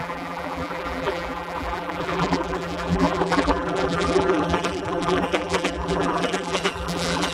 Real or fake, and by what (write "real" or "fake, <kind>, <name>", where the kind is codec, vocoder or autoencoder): fake, vocoder, BigVGAN v2